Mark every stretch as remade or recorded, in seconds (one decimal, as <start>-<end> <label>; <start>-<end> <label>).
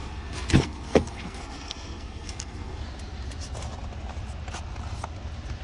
0.0-2.8 remade; 2.8-5.6 recorded